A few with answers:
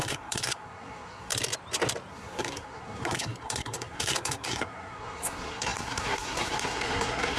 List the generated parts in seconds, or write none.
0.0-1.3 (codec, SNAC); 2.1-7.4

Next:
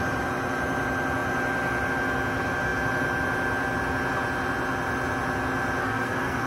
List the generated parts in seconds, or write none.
5.8-6.5 (codec, SNAC)

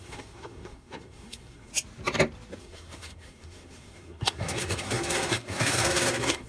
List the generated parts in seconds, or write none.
0.0-1.7 (codec, SNAC); 2.6-6.5

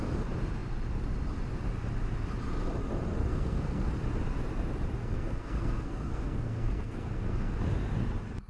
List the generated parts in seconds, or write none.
3.2-3.9 (codec, SNAC); 5.0-7.6

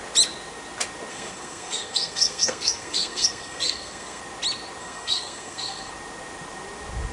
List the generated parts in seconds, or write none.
1.1-4.2 (codec, SNAC); 4.8-5.9

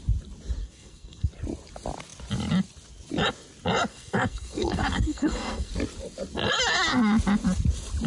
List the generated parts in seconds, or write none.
0.6-1.3 (codec, SNAC); 3.9-5.7

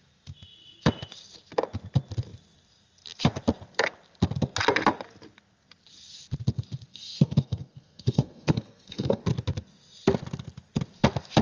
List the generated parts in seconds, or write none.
6.9-9.2 (codec, SNAC)